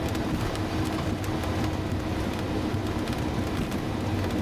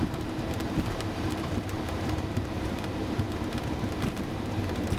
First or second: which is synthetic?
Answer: second